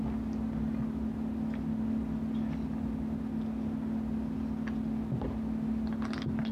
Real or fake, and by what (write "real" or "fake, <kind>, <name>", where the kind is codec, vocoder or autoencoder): real